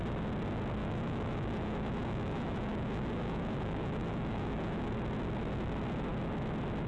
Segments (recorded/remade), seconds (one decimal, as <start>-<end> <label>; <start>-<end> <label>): 0.0-0.8 recorded; 0.8-4.9 remade; 4.9-6.9 recorded